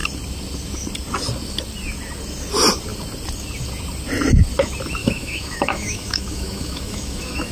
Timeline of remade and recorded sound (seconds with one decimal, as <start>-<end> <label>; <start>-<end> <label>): 0.0-5.0 recorded; 5.0-7.5 remade